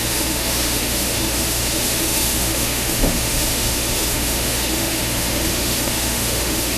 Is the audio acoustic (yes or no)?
no